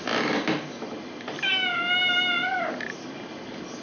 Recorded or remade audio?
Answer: recorded